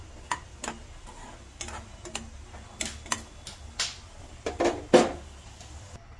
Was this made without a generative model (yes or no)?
yes